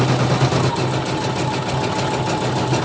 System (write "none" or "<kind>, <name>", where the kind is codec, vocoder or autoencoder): none